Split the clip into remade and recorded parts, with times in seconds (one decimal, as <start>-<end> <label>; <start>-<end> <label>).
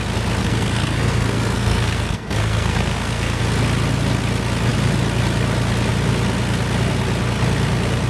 0.0-0.4 recorded; 0.4-3.4 remade; 3.4-8.1 recorded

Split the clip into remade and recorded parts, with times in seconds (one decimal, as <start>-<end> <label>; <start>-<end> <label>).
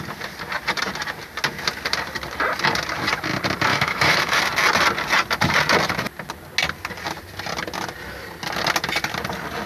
0.0-3.7 recorded; 3.7-4.4 remade; 4.4-9.7 recorded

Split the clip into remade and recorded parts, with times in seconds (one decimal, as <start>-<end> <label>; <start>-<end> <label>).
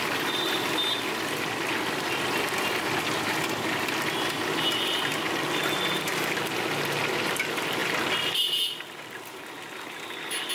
0.0-10.5 recorded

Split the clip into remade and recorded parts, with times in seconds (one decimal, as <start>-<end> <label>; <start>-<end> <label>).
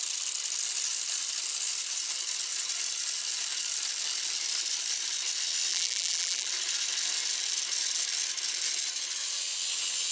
0.0-5.7 recorded; 5.7-6.5 remade; 6.5-10.1 recorded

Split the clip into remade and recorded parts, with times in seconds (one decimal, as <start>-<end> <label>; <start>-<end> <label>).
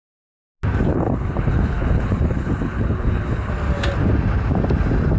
0.0-0.9 recorded; 0.9-3.5 remade; 3.5-5.2 recorded